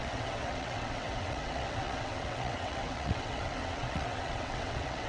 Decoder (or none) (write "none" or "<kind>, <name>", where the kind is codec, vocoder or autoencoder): vocoder, WaveNeXt